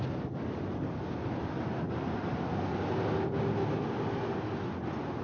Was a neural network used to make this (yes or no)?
no